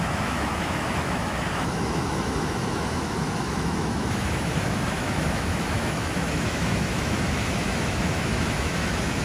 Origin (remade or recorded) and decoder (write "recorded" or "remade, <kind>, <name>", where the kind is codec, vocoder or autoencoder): remade, autoencoder, DAC-VAE